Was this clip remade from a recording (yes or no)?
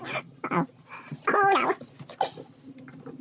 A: no